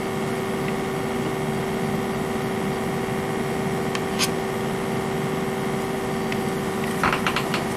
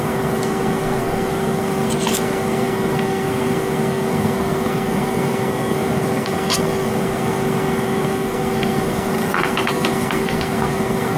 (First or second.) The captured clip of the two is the first